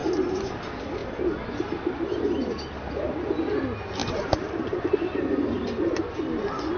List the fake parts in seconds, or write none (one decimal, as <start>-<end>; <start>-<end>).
0.0-0.5; 4.0-5.2